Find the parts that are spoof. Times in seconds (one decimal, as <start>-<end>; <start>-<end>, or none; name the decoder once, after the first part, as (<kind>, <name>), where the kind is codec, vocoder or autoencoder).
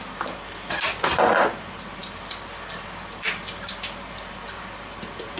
none